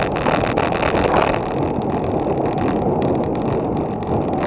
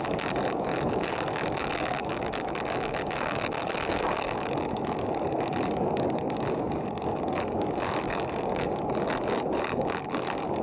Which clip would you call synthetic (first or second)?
second